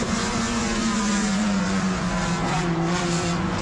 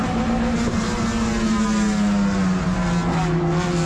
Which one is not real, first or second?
first